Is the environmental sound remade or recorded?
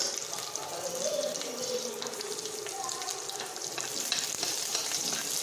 remade